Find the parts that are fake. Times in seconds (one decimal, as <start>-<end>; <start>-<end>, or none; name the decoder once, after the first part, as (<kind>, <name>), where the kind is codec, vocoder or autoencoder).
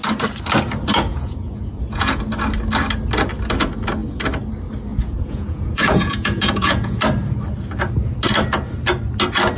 1.1-2.2 (vocoder, Vocos); 4.9-7.0